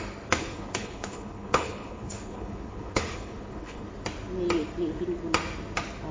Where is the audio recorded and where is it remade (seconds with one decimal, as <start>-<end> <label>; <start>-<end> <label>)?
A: 0.0-0.4 recorded; 0.4-3.9 remade; 3.9-6.1 recorded